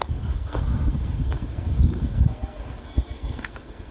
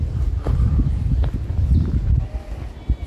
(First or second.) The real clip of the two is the second